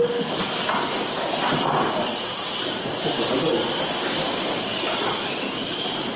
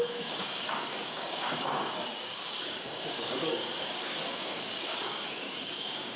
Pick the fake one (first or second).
second